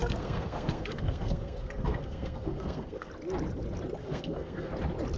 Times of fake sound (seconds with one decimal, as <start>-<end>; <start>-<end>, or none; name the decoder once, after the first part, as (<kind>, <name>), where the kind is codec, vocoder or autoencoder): 0.0-3.1 (codec, SNAC); 4.0-4.7